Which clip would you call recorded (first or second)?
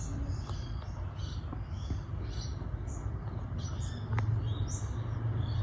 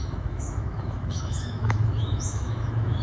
first